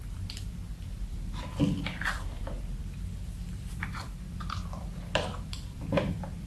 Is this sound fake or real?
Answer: fake